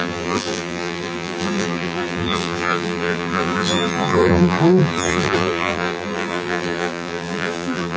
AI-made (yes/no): yes